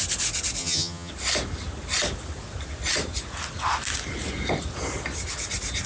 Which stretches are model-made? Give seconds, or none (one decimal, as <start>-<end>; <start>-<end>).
0.6-1.1